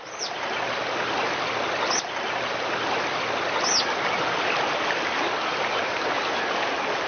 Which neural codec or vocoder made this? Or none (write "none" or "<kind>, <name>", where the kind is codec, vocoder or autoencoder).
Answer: none